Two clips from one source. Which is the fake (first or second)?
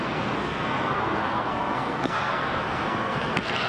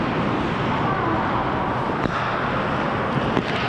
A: first